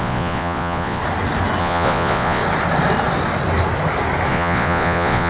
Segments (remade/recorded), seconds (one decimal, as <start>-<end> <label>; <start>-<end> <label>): 0.0-1.0 remade; 1.0-1.6 recorded; 1.6-2.4 remade; 2.4-4.3 recorded; 4.3-5.3 remade